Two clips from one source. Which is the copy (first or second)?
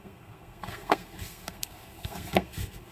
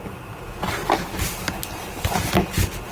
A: first